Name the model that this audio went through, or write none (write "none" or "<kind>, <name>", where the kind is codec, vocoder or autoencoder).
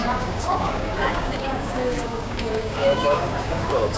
codec, DAC